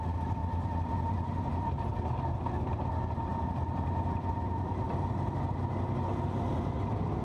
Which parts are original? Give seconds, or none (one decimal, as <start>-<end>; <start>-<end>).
0.0-7.2